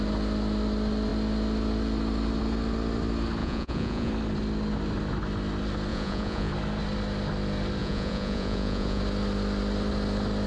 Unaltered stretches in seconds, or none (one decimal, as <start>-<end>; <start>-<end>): 0.0-3.4; 4.1-5.9; 6.5-7.8; 9.0-10.5